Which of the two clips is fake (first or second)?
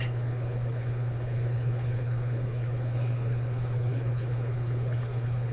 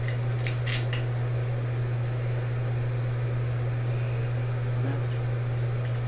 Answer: first